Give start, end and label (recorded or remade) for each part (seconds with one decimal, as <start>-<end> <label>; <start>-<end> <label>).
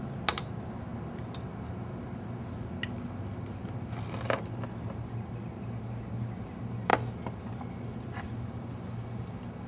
0.0-9.7 recorded